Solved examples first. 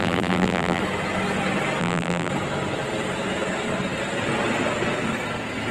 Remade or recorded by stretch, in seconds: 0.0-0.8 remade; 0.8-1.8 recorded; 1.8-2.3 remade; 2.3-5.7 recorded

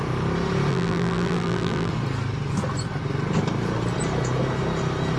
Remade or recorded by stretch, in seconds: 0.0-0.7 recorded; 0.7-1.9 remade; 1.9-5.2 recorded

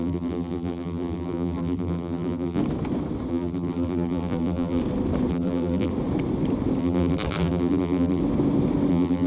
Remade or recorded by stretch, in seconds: 0.0-2.6 remade; 2.6-3.3 recorded; 3.3-4.8 remade; 4.8-5.3 recorded; 5.3-5.9 remade; 5.9-6.8 recorded; 6.8-8.2 remade; 8.2-8.9 recorded; 8.9-9.3 remade